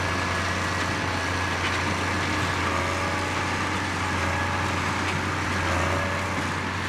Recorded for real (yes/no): yes